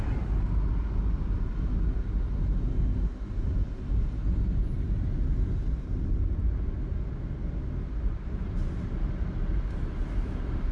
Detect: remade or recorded recorded